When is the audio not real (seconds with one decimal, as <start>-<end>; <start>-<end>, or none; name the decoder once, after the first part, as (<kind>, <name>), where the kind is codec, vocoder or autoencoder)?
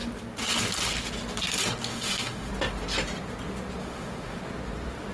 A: 1.9-2.5 (autoencoder, DAC-VAE); 3.8-4.4